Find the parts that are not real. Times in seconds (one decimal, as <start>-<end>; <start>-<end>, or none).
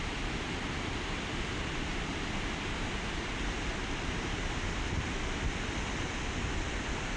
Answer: none